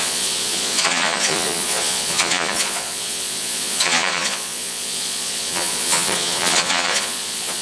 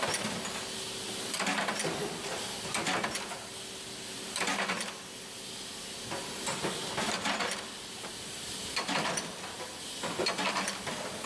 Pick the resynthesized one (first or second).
first